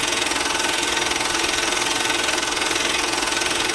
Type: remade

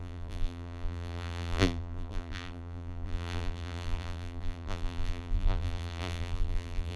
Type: remade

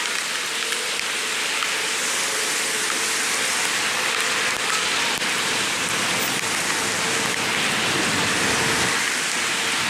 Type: recorded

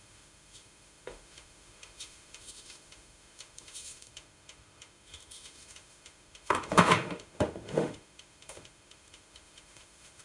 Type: remade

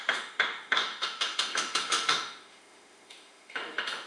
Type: remade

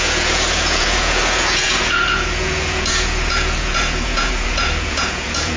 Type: remade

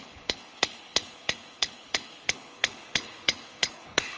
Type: remade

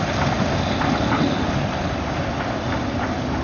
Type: remade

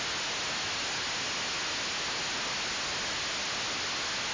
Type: recorded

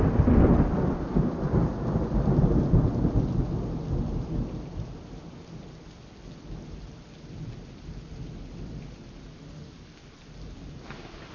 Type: recorded